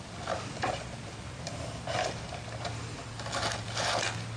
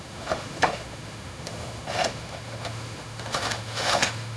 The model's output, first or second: second